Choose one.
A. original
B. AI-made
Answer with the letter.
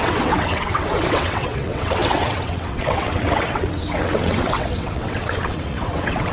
B